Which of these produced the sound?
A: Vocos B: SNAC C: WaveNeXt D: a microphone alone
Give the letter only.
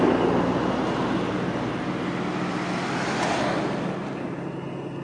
D